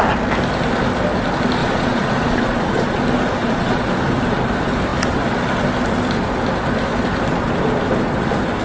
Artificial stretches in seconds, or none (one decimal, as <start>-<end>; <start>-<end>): 1.6-3.0; 3.4-3.9